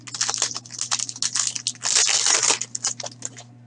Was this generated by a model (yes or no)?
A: no